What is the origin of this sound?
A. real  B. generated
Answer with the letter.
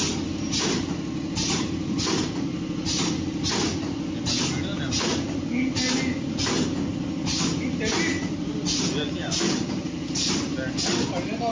A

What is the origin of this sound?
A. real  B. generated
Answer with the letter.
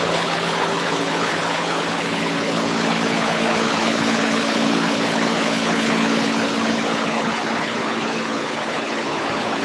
B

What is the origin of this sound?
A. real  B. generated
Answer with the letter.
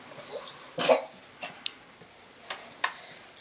A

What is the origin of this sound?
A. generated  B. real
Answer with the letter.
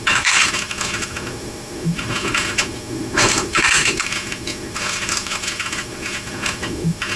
A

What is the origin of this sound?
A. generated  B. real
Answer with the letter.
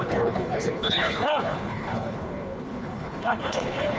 A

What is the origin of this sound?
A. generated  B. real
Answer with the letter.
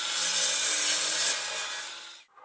B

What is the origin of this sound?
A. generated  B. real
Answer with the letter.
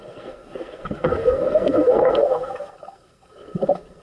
A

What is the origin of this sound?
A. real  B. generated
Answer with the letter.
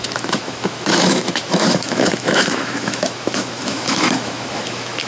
B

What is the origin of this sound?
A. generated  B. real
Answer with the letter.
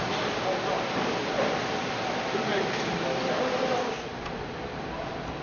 B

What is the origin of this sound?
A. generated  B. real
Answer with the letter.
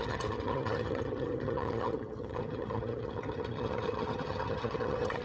A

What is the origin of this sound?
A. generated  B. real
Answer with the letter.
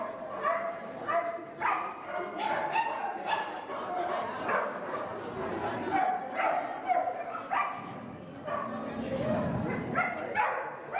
B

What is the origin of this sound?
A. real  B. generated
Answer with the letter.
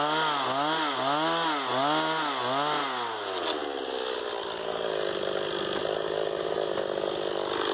A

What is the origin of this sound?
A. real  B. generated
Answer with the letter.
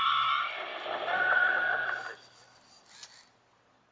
A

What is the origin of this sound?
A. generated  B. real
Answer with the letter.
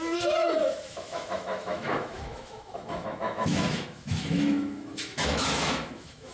A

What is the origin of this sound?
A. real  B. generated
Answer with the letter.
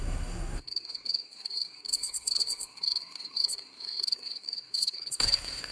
B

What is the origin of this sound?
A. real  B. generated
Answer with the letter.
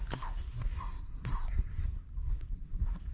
B